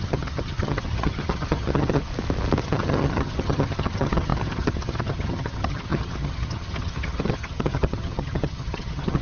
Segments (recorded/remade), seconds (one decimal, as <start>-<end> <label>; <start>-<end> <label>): 0.0-2.1 remade; 2.1-2.6 recorded; 2.6-9.2 remade